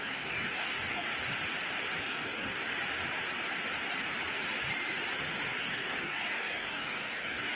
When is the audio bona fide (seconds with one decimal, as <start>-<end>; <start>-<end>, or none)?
1.1-2.0; 2.7-5.6